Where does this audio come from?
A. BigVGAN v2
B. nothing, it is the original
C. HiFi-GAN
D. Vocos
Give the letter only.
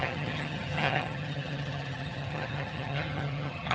C